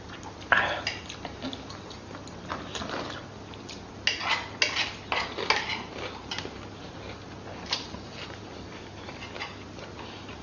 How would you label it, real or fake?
real